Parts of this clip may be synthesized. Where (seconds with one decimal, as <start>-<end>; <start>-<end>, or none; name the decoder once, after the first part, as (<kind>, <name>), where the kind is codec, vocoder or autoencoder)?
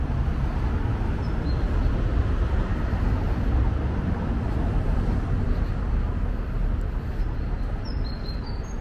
none